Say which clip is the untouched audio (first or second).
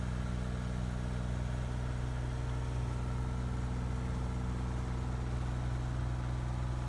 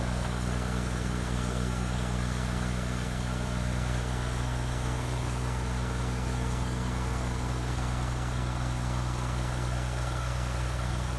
first